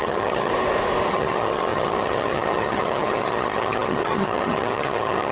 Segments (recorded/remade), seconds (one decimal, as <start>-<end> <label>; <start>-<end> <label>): 0.0-0.5 remade; 0.5-1.1 recorded; 1.1-5.3 remade